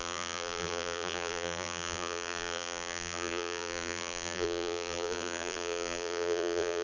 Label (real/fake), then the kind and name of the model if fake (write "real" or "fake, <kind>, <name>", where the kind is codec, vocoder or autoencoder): fake, vocoder, BigVGAN v2